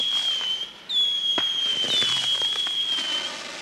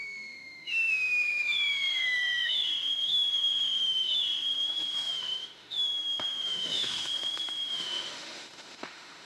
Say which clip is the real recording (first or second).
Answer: first